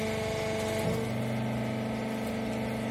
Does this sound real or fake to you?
real